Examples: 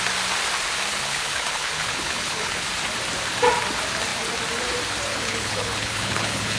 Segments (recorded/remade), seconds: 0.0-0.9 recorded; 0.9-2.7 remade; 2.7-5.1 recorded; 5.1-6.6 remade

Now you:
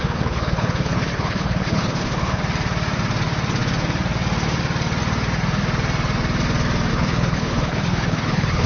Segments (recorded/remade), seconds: 0.0-2.4 remade; 2.4-6.9 recorded; 6.9-8.7 remade

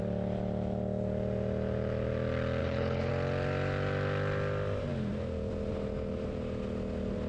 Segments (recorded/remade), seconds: 0.0-2.6 recorded; 2.6-3.1 remade; 3.1-7.3 recorded

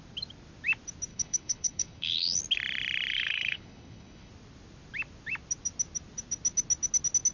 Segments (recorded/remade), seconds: 0.0-1.1 recorded; 1.1-2.4 remade; 2.4-3.1 recorded; 3.1-4.3 remade; 4.3-7.3 recorded

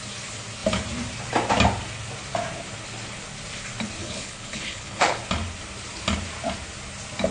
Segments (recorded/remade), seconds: 0.0-4.0 recorded; 4.0-5.2 remade; 5.2-7.3 recorded

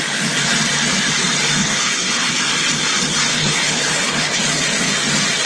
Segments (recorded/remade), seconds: 0.0-1.6 recorded; 1.6-2.3 remade; 2.3-3.3 recorded; 3.3-4.4 remade; 4.4-5.5 recorded